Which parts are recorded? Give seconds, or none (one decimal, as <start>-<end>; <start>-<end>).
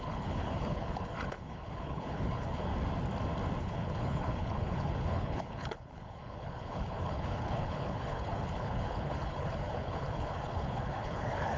2.7-3.6